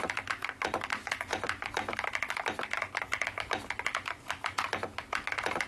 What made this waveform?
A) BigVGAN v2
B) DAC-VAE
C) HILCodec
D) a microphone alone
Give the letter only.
D